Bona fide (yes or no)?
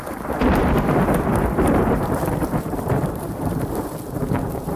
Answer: no